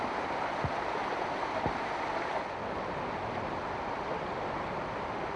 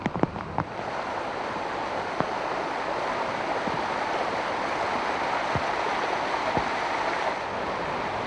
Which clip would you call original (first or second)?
second